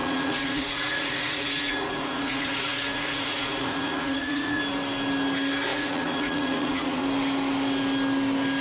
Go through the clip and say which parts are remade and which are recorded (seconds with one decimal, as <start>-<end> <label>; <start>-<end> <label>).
0.0-4.6 remade; 4.6-5.7 recorded; 5.7-7.0 remade; 7.0-8.6 recorded

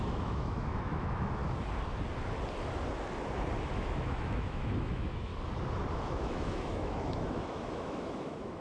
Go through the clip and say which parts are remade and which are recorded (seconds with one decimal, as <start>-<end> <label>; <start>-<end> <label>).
0.0-1.4 remade; 1.4-3.7 recorded; 3.7-5.3 remade; 5.3-5.9 recorded; 5.9-8.6 remade

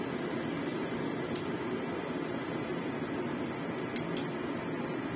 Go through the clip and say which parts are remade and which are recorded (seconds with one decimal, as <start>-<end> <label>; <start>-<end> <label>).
0.0-5.2 recorded

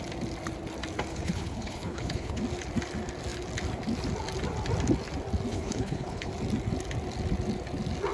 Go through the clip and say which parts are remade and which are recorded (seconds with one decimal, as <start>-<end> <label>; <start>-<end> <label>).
0.0-1.1 recorded; 1.1-2.4 remade; 2.4-5.5 recorded; 5.5-6.3 remade; 6.3-8.1 recorded

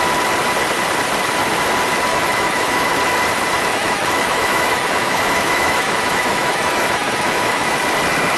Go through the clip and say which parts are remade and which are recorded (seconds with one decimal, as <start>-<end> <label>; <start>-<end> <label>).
0.0-2.1 recorded; 2.1-3.0 remade; 3.0-3.7 recorded; 3.7-7.7 remade; 7.7-8.4 recorded

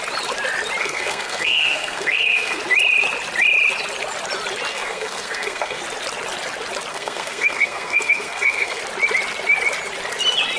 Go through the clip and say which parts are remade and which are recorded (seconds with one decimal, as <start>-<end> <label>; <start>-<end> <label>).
0.0-0.8 recorded; 0.8-2.6 remade; 2.6-4.7 recorded; 4.7-5.8 remade; 5.8-6.9 recorded; 6.9-8.8 remade; 8.8-10.6 recorded

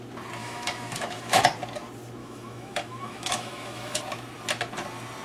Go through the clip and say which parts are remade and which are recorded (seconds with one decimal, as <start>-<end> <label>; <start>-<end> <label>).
0.0-0.4 recorded; 0.4-1.4 remade; 1.4-2.2 recorded; 2.2-4.0 remade; 4.0-5.2 recorded

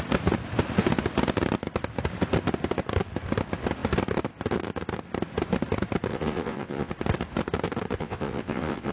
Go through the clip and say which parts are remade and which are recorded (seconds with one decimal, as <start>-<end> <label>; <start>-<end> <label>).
0.0-6.1 recorded; 6.1-6.9 remade; 6.9-8.0 recorded; 8.0-8.9 remade